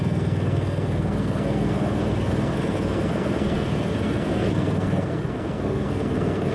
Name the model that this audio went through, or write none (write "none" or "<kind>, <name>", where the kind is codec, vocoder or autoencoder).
codec, SNAC